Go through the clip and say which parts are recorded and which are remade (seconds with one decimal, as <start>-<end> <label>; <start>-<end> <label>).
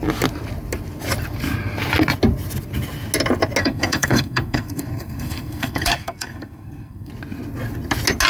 0.0-3.6 recorded; 3.6-7.1 remade; 7.1-8.3 recorded